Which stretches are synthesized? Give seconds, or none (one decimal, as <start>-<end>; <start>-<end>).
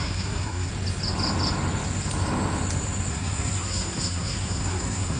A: 0.0-0.7; 3.1-5.2